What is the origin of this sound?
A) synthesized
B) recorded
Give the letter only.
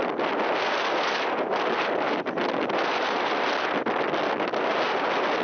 B